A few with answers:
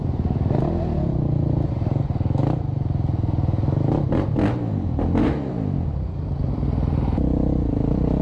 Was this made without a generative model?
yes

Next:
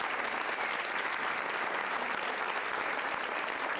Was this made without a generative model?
yes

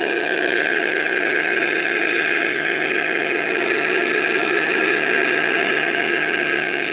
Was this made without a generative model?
no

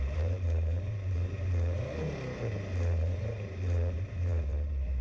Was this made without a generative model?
no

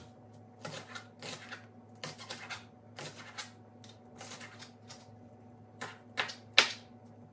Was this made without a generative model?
yes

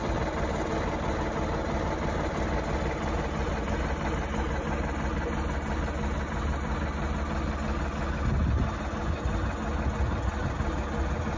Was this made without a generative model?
yes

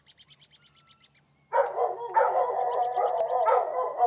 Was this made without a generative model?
yes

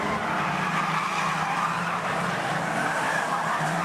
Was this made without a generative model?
yes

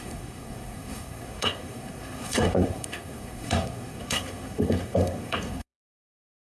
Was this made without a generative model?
no